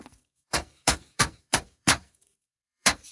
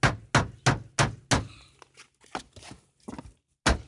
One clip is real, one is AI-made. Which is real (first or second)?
second